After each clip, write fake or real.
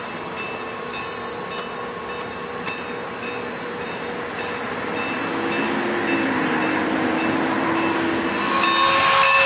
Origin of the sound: real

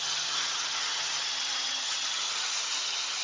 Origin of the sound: fake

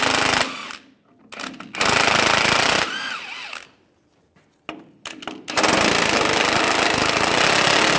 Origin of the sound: real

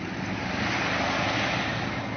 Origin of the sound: real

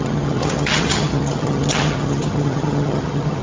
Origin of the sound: fake